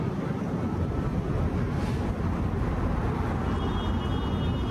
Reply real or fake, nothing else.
real